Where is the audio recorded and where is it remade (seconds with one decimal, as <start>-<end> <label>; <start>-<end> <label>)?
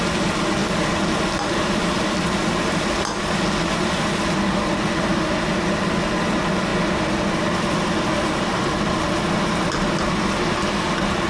0.0-11.3 recorded